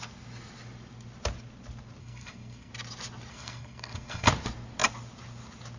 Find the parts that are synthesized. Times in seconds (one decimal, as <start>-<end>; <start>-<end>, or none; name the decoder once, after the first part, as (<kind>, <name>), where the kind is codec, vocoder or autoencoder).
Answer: 2.0-2.7 (codec, SNAC); 3.3-4.3